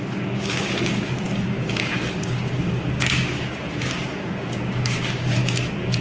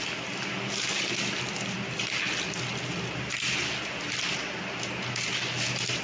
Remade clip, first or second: first